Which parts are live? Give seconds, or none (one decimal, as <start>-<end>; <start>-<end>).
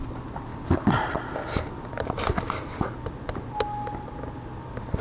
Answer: 0.0-5.0